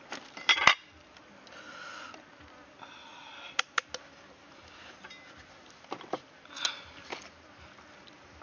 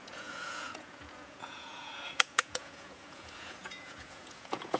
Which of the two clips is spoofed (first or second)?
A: second